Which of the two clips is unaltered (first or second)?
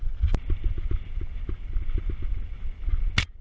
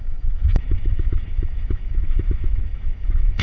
first